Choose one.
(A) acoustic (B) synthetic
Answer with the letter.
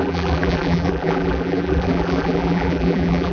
B